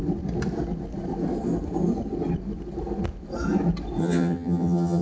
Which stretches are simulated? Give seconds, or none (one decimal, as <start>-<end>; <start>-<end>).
4.0-5.0